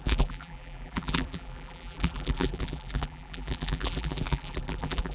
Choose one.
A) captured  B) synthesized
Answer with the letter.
B